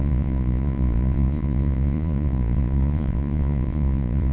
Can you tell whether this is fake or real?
fake